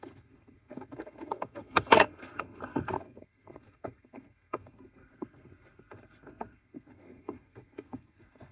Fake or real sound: fake